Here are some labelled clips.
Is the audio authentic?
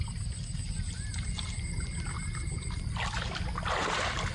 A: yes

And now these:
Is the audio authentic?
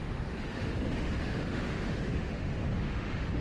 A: no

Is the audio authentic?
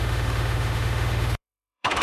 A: no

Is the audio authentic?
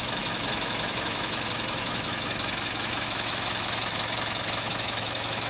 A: no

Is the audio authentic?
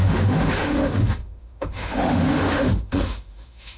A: no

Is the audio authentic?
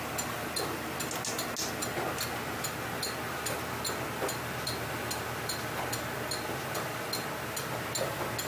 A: yes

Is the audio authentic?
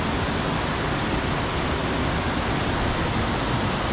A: yes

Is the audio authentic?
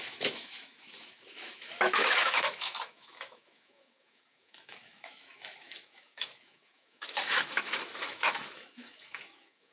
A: no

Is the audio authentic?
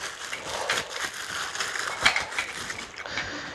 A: yes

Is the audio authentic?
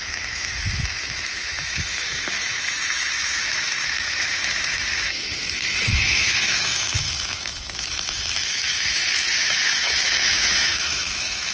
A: no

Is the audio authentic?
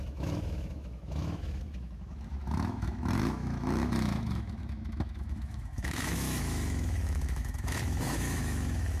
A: no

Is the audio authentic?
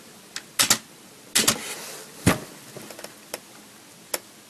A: yes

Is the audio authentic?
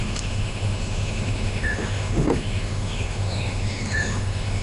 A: no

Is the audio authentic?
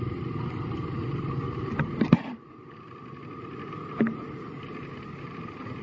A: yes